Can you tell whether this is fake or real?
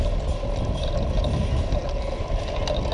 real